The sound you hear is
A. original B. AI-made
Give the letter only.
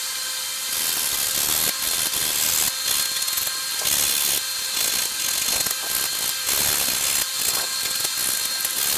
A